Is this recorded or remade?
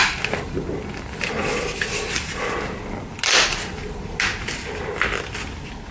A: recorded